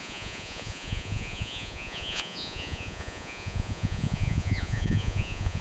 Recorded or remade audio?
remade